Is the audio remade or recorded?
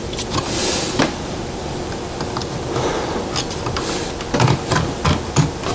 recorded